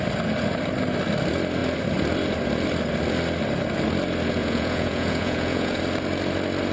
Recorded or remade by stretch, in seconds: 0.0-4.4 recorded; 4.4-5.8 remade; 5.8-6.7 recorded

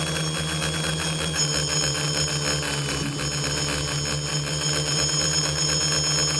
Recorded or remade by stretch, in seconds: 0.0-0.9 recorded; 0.9-2.3 remade; 2.3-4.3 recorded; 4.3-5.8 remade; 5.8-6.4 recorded

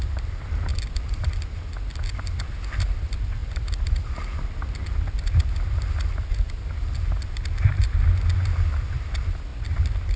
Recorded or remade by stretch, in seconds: 0.0-10.2 recorded

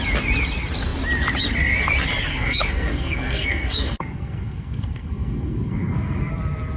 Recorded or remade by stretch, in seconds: 0.0-2.3 recorded; 2.3-6.3 remade; 6.3-6.8 recorded

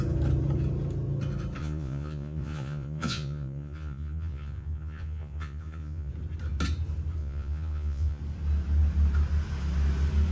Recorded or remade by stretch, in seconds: 0.0-1.6 recorded; 1.6-6.1 remade; 6.1-7.2 recorded; 7.2-8.2 remade; 8.2-10.3 recorded

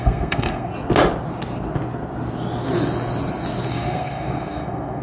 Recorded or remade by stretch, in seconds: 0.0-0.7 remade; 0.7-3.7 recorded; 3.7-5.0 remade